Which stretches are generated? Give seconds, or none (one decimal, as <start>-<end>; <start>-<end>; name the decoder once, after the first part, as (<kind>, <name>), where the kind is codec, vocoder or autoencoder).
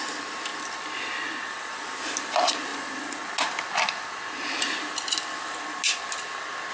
none